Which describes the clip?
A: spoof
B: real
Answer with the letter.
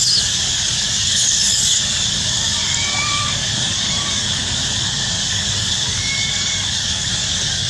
A